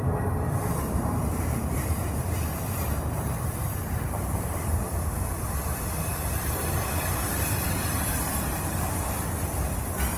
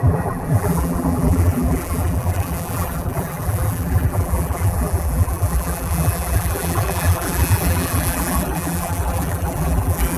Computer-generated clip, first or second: second